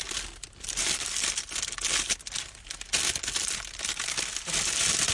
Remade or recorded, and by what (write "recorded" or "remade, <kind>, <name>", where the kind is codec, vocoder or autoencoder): recorded